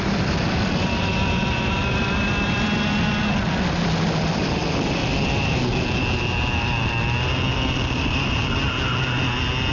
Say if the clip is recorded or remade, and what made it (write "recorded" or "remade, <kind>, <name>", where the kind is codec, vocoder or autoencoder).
recorded